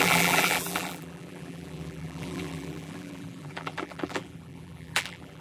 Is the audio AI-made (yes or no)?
yes